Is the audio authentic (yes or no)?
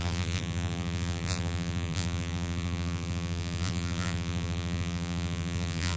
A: no